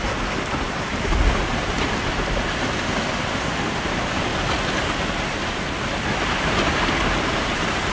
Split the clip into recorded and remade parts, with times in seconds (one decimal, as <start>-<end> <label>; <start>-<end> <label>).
0.0-3.3 recorded; 3.3-3.8 remade; 3.8-7.9 recorded